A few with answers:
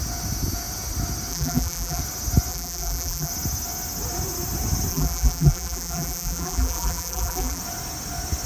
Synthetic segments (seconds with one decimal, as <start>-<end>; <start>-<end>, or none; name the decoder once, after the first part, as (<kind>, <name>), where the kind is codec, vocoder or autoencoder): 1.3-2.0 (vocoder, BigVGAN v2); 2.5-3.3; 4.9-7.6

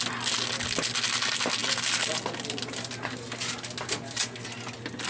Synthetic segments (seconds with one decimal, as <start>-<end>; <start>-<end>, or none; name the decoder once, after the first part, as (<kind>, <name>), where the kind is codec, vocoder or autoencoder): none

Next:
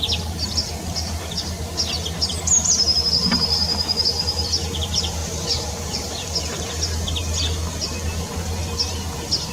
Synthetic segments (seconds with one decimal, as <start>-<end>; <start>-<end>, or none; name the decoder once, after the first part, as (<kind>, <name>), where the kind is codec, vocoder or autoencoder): 5.2-6.3 (vocoder, BigVGAN v2)

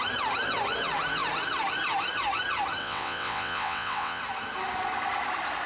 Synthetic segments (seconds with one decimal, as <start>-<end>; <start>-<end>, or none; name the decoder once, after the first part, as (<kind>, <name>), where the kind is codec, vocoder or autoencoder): 2.8-4.2 (vocoder, WaveNeXt)

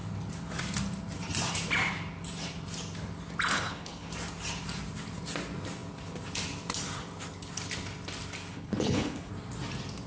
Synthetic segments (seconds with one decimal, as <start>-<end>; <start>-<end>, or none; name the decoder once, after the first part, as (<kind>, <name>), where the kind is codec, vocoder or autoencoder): 3.5-4.1 (codec, HILCodec); 8.5-9.3

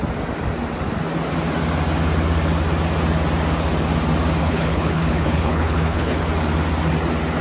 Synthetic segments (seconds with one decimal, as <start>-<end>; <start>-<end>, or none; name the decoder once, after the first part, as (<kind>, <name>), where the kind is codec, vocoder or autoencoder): 4.4-6.2 (codec, HILCodec)

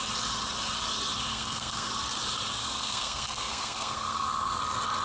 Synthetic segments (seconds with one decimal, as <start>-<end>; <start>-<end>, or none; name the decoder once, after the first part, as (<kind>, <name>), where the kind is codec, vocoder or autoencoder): 1.3-1.9 (codec, SNAC); 2.6-4.6